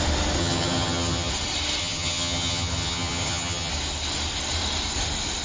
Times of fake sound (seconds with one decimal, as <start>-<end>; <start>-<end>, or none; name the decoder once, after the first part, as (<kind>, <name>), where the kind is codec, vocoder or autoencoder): 0.4-1.3 (vocoder, HiFi-GAN); 1.8-3.7